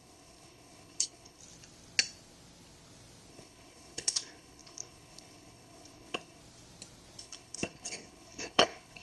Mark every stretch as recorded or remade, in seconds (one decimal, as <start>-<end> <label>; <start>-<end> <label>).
0.0-1.4 remade; 1.4-3.3 recorded; 3.3-6.4 remade; 6.4-7.2 recorded; 7.2-9.0 remade